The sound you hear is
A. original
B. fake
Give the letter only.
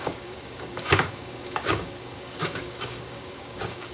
B